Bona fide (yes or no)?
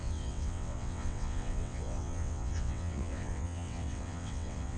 no